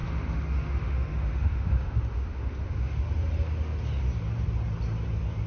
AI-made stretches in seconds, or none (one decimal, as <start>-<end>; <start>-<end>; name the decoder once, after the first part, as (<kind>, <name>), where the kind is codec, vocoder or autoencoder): 0.0-3.1 (autoencoder, DAC-VAE)